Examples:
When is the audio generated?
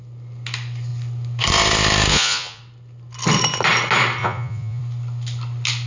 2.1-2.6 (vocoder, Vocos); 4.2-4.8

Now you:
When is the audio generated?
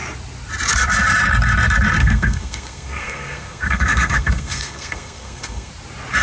2.0-5.7 (codec, SNAC)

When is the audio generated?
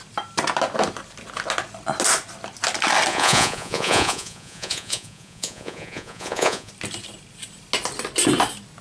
3.1-6.7 (vocoder, Vocos)